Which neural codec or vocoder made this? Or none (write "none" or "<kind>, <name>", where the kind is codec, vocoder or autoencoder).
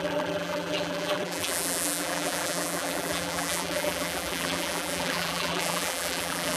vocoder, BigVGAN v2